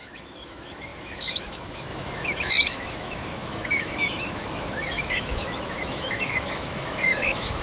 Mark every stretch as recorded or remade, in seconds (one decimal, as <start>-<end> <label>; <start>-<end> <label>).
0.0-7.6 remade